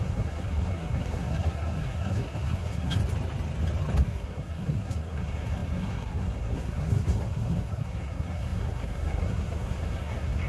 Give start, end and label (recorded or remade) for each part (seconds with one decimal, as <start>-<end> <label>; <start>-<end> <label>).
0.0-3.0 remade; 3.0-4.0 recorded; 4.0-10.5 remade